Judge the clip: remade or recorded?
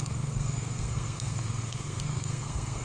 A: remade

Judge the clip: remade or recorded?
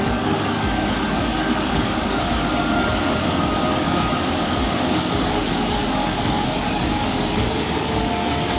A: remade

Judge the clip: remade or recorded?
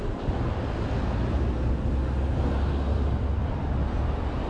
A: recorded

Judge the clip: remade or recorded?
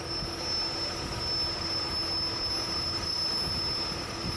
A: recorded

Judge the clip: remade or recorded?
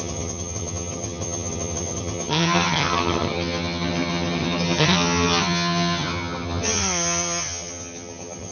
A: remade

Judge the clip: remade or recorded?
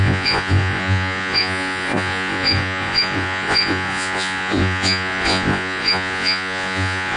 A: remade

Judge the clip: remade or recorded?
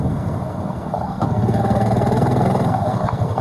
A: remade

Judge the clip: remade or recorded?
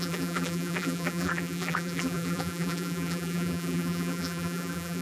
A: remade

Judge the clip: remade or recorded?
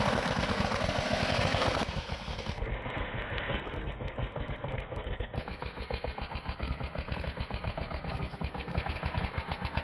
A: remade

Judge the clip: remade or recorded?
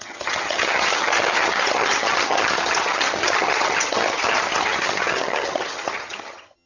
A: remade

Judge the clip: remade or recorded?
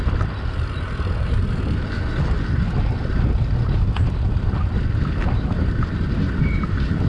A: recorded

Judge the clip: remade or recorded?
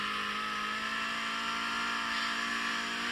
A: recorded